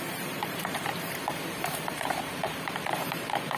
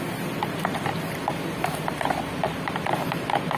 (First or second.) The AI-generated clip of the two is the first